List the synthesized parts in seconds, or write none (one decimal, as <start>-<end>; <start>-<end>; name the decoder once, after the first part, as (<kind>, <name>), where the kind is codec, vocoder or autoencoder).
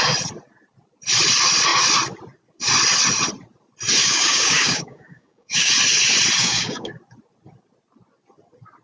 4.0-5.7 (codec, DAC); 6.4-6.9